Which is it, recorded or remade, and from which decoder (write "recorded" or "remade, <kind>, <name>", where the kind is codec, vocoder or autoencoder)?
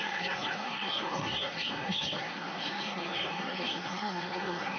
remade, codec, SNAC